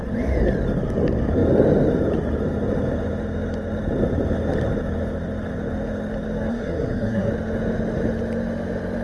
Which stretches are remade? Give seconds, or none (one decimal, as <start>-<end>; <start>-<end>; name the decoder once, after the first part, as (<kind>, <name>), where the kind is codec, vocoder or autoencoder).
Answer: 6.5-7.3 (codec, SNAC)